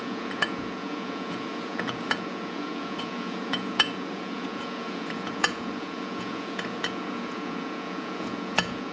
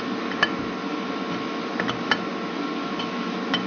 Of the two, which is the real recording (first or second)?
second